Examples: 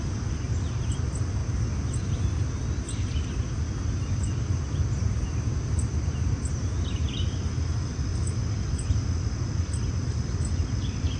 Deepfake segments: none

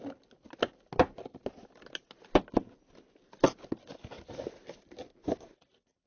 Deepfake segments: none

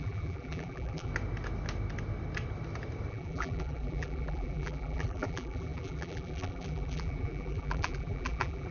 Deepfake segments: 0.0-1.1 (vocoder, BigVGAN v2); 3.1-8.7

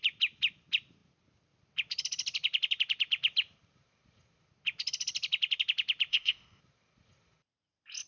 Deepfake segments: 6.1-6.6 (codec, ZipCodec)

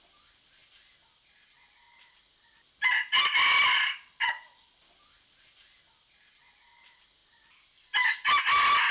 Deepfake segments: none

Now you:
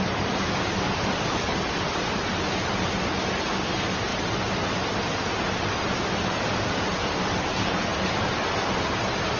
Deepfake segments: none

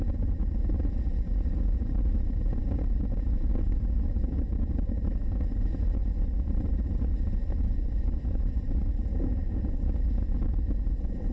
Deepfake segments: 0.0-6.0 (vocoder, Vocos); 6.7-11.3